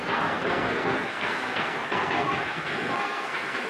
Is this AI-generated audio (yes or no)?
yes